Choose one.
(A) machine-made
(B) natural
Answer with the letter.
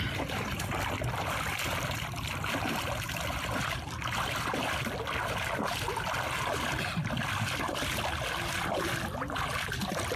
B